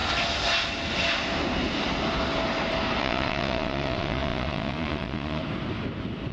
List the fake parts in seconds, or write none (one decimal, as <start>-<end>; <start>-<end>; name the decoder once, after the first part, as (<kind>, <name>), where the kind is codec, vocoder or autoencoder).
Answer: 3.0-5.4 (vocoder, Vocos)